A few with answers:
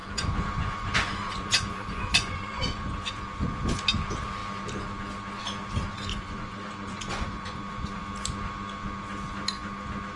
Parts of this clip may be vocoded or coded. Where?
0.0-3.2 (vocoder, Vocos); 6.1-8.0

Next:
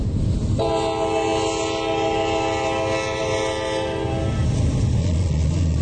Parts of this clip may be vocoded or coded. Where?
5.0-5.8 (vocoder, Vocos)

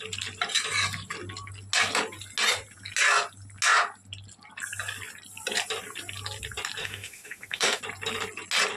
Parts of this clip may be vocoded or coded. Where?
6.8-7.8 (autoencoder, DAC-VAE)